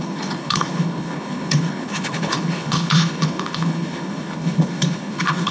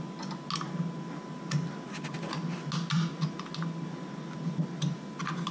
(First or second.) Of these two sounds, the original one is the second